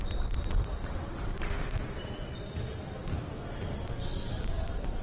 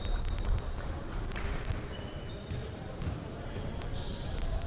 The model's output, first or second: second